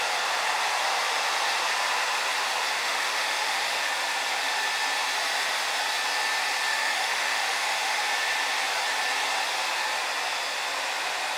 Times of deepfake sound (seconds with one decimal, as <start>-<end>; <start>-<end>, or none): 2.8-3.9; 6.7-8.0